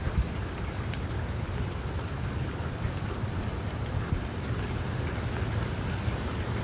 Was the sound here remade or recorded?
recorded